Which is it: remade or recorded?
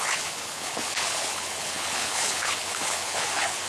remade